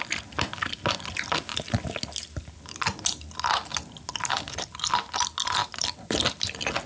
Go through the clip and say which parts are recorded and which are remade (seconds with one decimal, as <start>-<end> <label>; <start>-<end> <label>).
0.0-6.9 recorded